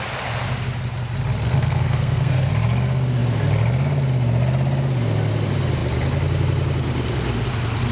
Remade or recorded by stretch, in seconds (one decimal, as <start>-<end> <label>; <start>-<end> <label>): 0.0-1.4 recorded; 1.4-2.5 remade; 2.5-7.9 recorded